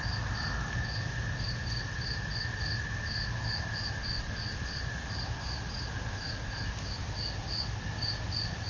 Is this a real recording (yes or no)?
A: yes